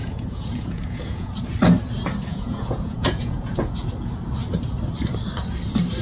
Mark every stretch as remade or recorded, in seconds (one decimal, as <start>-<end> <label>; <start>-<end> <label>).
0.0-1.4 remade; 1.4-2.3 recorded; 2.3-3.7 remade; 3.7-6.0 recorded